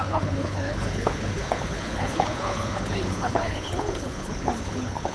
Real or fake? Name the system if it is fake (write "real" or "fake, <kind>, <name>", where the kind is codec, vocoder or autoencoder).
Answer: fake, codec, HILCodec